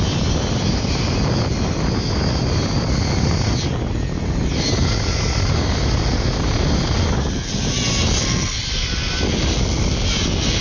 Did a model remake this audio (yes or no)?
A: no